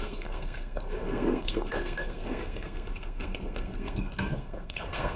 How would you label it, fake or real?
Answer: fake